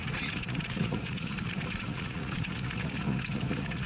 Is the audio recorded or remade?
remade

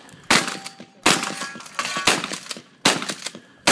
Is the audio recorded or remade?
recorded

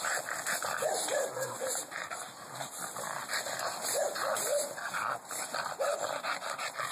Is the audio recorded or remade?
recorded